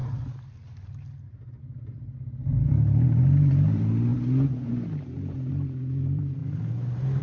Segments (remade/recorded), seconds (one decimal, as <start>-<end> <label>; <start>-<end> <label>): 0.0-1.6 recorded; 1.6-4.1 remade; 4.1-4.7 recorded; 4.7-7.2 remade